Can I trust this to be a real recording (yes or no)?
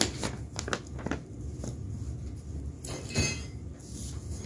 yes